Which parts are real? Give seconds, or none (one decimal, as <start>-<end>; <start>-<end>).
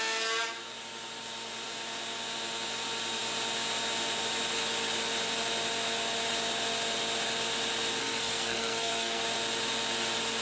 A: 0.0-8.0; 9.2-10.4